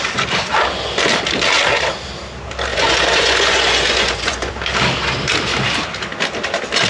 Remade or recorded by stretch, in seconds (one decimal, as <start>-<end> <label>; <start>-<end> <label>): 0.0-2.7 recorded; 2.7-4.5 remade; 4.5-6.9 recorded